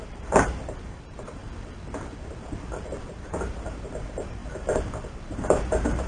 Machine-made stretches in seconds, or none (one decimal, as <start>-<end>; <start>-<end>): 0.0-1.4; 3.2-4.4; 5.3-6.1